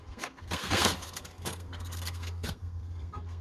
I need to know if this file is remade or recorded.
remade